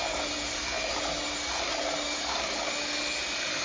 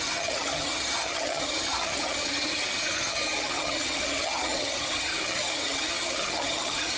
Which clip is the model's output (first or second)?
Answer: second